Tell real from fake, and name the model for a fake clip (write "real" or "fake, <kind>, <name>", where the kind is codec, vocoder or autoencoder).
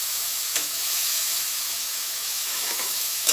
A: fake, autoencoder, DAC-VAE